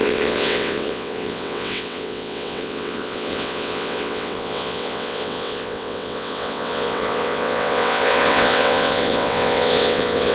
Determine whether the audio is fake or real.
fake